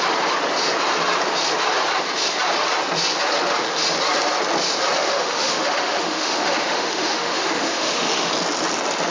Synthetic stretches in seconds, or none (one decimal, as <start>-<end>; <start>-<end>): 5.0-8.3